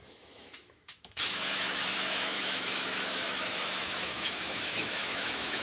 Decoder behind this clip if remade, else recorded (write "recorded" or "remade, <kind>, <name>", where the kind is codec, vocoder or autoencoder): remade, autoencoder, DAC-VAE